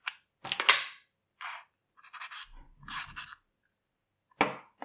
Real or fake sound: real